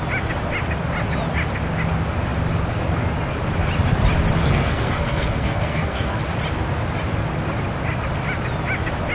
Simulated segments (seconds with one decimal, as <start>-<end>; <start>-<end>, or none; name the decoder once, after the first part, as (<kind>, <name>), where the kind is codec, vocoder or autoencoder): 4.4-6.2 (codec, SNAC)